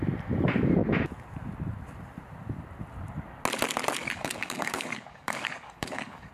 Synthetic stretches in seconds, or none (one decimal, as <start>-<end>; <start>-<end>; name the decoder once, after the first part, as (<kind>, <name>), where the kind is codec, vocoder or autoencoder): 4.0-6.3 (codec, DAC)